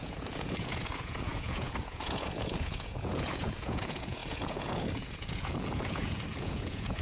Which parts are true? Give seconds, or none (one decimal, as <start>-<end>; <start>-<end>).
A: none